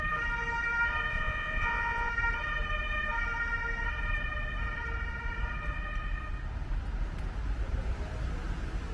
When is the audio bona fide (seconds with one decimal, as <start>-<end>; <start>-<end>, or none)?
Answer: 0.0-1.1; 2.1-8.9